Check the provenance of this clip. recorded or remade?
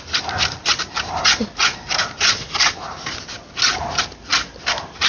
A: recorded